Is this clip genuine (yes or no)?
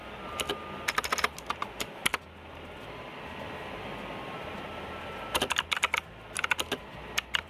yes